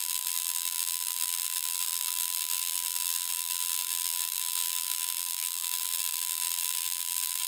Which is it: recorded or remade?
remade